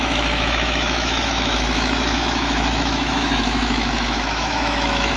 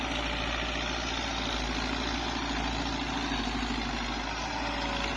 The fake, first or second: first